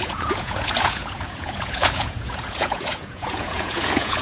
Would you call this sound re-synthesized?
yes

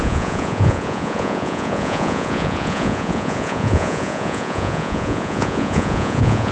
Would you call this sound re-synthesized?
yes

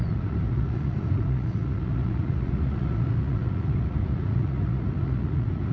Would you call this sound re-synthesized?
yes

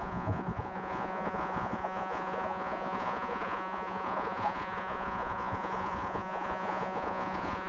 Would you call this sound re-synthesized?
yes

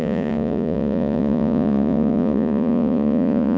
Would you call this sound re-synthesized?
yes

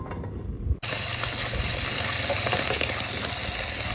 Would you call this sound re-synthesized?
no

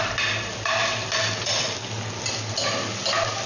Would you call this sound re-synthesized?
no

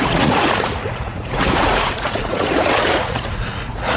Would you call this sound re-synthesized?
yes